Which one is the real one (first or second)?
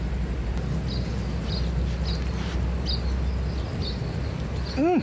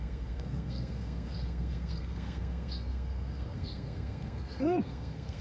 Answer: first